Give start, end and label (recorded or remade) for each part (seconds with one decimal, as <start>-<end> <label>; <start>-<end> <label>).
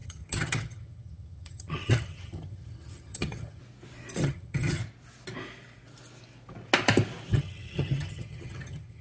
0.0-3.6 remade; 3.6-4.2 recorded; 4.2-4.8 remade; 4.8-7.3 recorded; 7.3-9.0 remade